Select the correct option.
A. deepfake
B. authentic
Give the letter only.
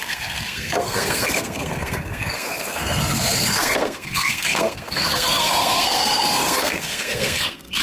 A